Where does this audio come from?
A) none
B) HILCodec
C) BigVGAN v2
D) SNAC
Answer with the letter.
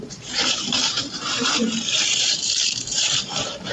C